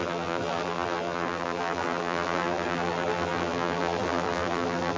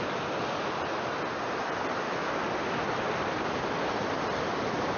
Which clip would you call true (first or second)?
second